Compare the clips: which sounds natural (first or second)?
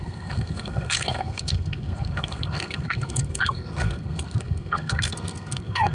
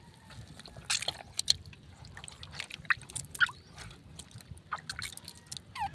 second